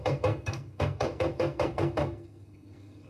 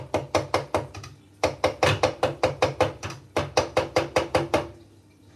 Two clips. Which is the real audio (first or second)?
second